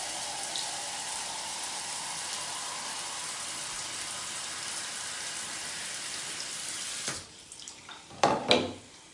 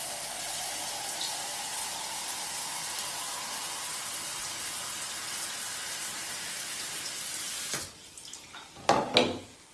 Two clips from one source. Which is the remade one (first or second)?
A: first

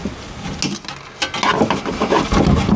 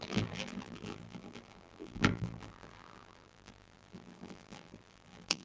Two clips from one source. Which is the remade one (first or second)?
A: second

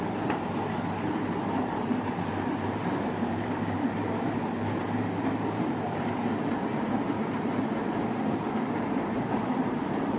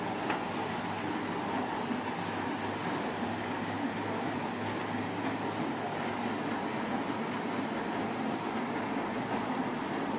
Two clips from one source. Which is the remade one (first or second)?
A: first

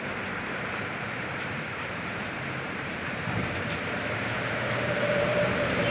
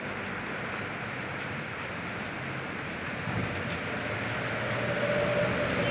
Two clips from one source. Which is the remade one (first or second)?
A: first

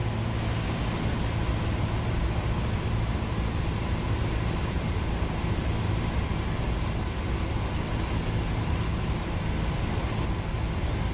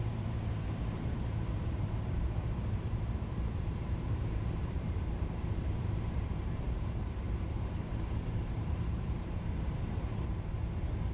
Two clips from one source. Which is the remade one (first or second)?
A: second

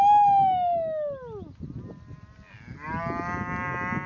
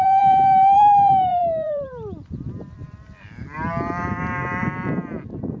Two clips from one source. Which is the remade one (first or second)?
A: second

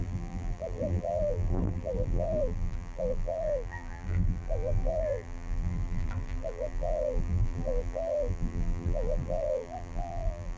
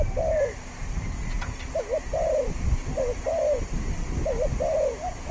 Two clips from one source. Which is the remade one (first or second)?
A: first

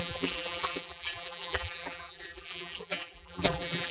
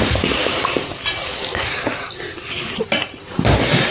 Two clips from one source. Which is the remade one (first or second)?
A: first